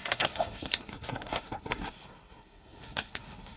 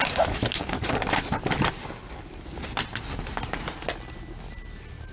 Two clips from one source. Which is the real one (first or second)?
second